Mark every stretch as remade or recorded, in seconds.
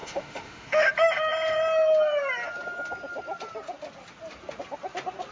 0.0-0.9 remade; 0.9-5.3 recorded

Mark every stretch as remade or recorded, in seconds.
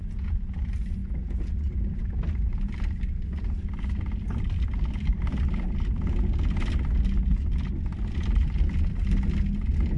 0.0-0.5 remade; 0.5-1.0 recorded; 1.0-1.5 remade; 1.5-10.0 recorded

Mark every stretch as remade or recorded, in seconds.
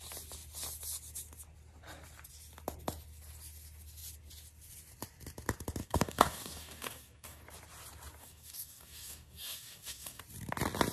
0.0-5.8 recorded; 5.8-7.4 remade; 7.4-8.2 recorded; 8.2-10.2 remade; 10.2-10.9 recorded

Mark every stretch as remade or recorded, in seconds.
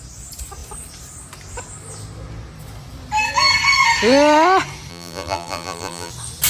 0.0-4.9 recorded; 4.9-6.1 remade; 6.1-6.5 recorded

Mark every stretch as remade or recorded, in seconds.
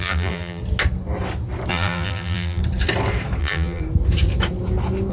0.0-0.6 remade; 0.6-1.7 recorded; 1.7-2.6 remade; 2.6-3.4 recorded; 3.4-3.8 remade; 3.8-5.1 recorded